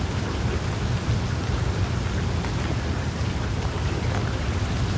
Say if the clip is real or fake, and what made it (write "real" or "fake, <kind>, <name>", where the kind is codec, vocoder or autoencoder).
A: real